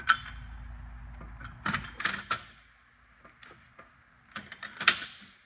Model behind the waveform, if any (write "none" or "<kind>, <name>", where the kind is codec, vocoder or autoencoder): none